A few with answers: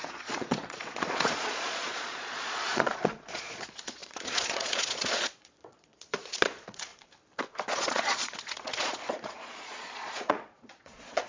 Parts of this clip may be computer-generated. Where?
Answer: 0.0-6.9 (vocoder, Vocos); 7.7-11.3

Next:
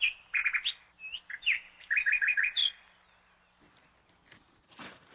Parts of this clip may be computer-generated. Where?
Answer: 0.0-0.4 (vocoder, BigVGAN v2); 1.4-2.6; 4.6-5.1

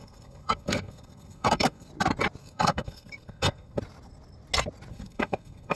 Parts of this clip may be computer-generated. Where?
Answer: 0.0-1.9 (codec, SNAC); 2.4-3.8; 4.9-5.8

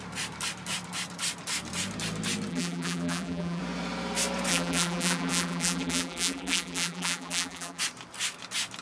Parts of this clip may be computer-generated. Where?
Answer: 2.5-3.6 (vocoder, BigVGAN v2); 4.5-7.8

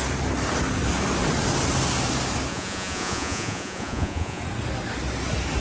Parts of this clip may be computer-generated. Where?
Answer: 2.5-4.4 (vocoder, Vocos)

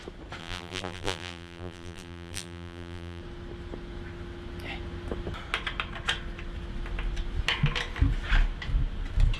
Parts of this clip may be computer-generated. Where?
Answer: 0.4-3.2 (vocoder, BigVGAN v2)

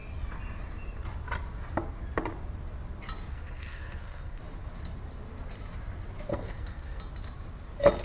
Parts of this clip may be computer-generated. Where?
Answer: 3.3-4.4 (codec, SNAC); 6.3-7.0

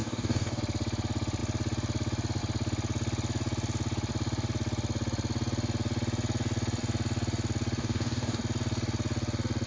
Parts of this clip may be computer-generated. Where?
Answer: 0.0-0.6 (codec, DAC); 7.8-8.4